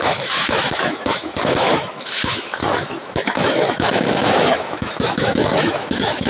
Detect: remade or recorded remade